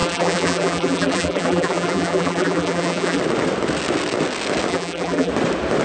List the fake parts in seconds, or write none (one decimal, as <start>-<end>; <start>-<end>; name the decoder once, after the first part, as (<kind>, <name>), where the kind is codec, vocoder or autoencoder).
0.0-3.2 (vocoder, BigVGAN v2); 4.7-5.3